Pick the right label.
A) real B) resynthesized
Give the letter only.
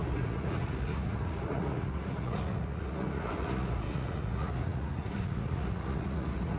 B